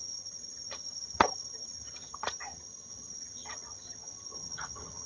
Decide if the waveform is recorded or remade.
remade